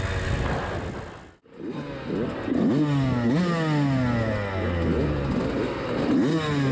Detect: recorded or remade recorded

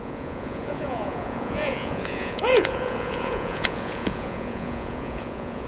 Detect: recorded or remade remade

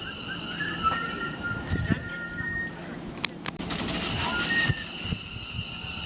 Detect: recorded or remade recorded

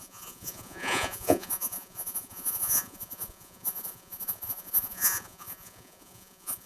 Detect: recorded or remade remade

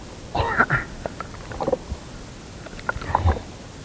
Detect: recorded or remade recorded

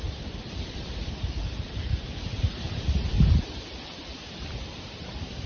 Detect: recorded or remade remade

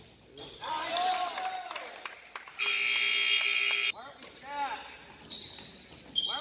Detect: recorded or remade recorded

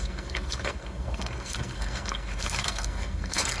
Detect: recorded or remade remade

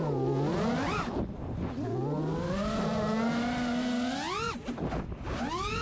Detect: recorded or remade recorded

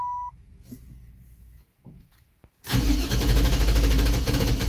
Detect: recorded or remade remade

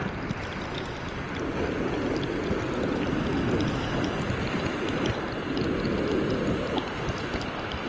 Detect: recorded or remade recorded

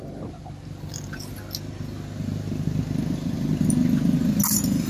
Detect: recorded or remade recorded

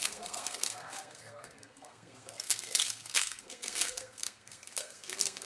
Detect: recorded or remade remade